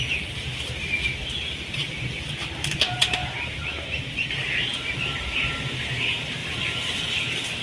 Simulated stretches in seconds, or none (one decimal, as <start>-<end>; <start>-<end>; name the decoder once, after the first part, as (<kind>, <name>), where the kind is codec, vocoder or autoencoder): 3.2-4.3 (vocoder, BigVGAN v2)